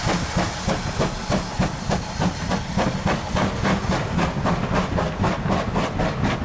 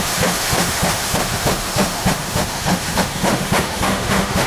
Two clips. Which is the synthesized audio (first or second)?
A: second